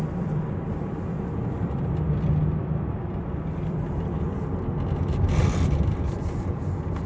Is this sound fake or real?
real